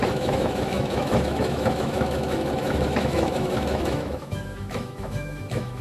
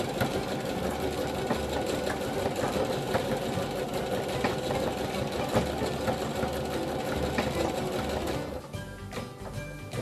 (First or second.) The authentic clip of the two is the second